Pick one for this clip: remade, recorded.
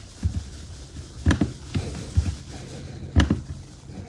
recorded